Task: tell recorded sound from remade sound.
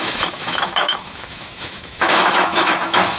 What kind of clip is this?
remade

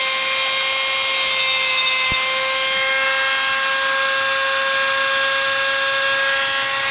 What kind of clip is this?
recorded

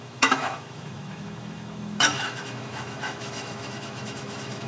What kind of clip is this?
remade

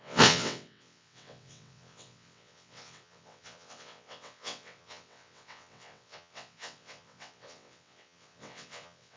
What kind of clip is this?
remade